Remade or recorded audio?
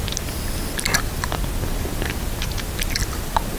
recorded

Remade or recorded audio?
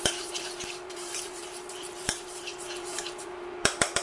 remade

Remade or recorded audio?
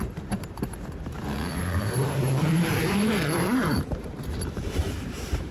remade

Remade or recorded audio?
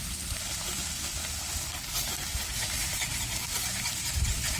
remade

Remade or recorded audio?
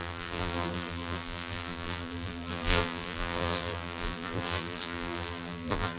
remade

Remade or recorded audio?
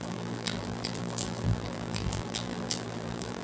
remade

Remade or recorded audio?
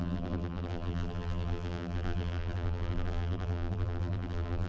remade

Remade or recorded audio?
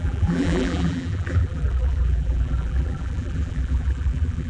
remade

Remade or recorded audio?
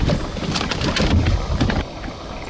recorded